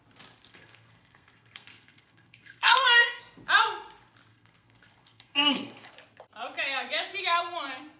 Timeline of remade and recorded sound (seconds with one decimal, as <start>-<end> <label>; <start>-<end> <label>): 0.0-0.5 recorded; 0.5-3.2 remade; 3.2-4.3 recorded; 4.3-5.9 remade; 5.9-8.0 recorded